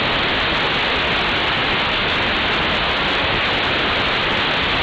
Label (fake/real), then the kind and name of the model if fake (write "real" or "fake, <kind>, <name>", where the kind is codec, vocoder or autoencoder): real